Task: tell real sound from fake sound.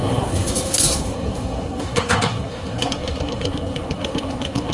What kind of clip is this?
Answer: fake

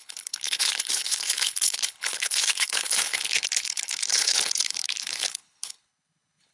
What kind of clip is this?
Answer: fake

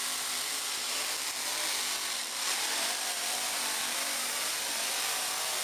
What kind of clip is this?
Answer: fake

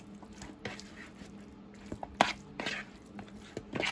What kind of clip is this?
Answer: real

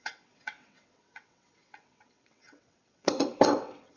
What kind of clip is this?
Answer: fake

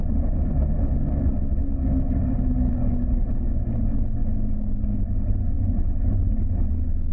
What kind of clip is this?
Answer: real